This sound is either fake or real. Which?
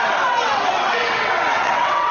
fake